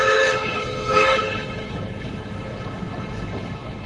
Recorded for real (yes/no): no